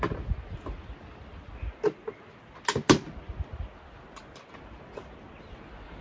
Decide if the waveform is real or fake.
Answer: real